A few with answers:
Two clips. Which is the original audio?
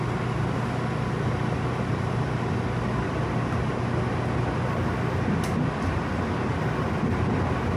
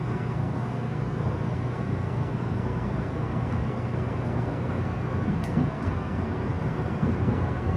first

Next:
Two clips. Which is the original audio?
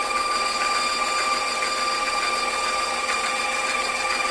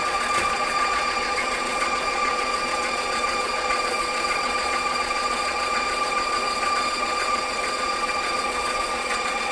first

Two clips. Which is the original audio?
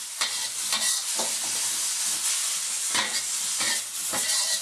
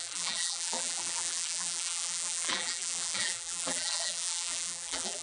first